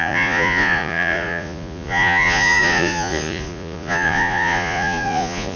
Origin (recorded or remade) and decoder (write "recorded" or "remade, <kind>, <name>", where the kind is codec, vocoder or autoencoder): remade, vocoder, Vocos